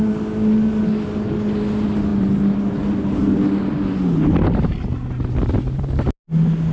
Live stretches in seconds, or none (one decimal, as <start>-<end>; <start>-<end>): 0.0-6.7